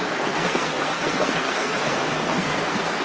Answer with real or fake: fake